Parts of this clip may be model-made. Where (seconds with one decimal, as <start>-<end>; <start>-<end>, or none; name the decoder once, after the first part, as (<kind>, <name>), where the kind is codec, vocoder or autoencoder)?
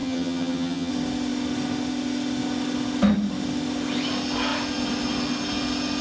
0.0-0.9 (vocoder, HiFi-GAN)